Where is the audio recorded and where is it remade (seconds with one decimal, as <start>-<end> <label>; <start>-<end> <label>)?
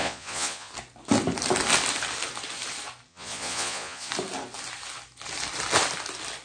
0.0-0.7 remade; 0.7-3.1 recorded; 3.1-4.1 remade; 4.1-6.4 recorded